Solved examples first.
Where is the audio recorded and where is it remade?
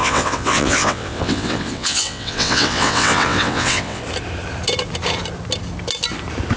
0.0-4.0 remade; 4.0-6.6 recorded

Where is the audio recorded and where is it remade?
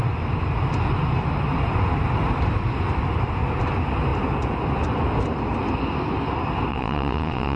0.0-6.7 recorded; 6.7-7.6 remade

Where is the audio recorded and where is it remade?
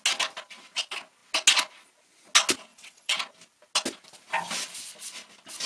0.0-2.7 recorded; 2.7-3.2 remade; 3.2-5.7 recorded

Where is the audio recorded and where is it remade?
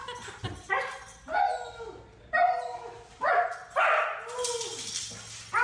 0.0-5.6 recorded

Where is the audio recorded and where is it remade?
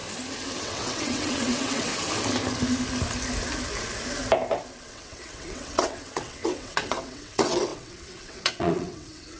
0.0-0.6 recorded; 0.6-1.9 remade; 1.9-4.8 recorded; 4.8-9.4 remade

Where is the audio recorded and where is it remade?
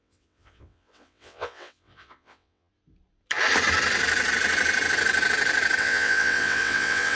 0.0-2.7 remade; 2.7-5.8 recorded; 5.8-7.2 remade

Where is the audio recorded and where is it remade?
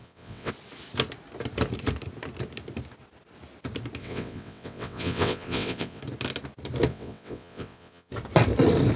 0.0-0.5 remade; 0.5-4.0 recorded; 4.0-6.0 remade; 6.0-6.9 recorded; 6.9-8.1 remade; 8.1-9.0 recorded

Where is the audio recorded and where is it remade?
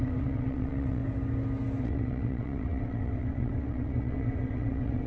0.0-1.0 remade; 1.0-1.8 recorded; 1.8-5.1 remade